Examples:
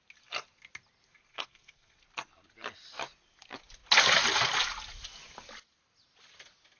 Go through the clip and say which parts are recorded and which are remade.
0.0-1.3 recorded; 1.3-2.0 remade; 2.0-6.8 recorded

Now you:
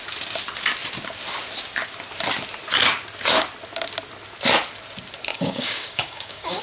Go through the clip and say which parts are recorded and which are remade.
0.0-5.3 recorded; 5.3-6.6 remade

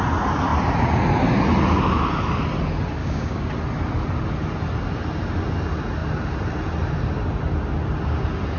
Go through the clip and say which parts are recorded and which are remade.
0.0-3.0 recorded; 3.0-3.5 remade; 3.5-8.6 recorded

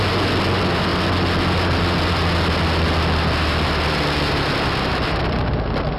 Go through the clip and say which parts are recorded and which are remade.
0.0-6.0 recorded

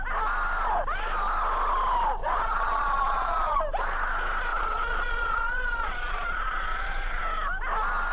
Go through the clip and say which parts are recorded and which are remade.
0.0-2.2 recorded; 2.2-3.6 remade; 3.6-4.5 recorded; 4.5-7.2 remade; 7.2-8.1 recorded

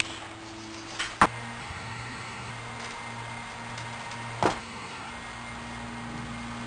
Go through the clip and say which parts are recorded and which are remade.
0.0-1.6 recorded; 1.6-2.5 remade; 2.5-4.6 recorded; 4.6-5.1 remade; 5.1-6.7 recorded

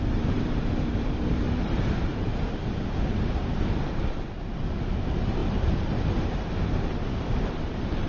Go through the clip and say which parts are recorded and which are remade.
0.0-2.3 remade; 2.3-5.0 recorded; 5.0-8.1 remade